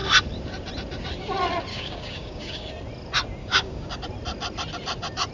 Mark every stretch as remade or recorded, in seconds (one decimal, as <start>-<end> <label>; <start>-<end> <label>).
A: 0.0-1.7 recorded; 1.7-2.7 remade; 2.7-3.4 recorded; 3.4-4.0 remade; 4.0-5.3 recorded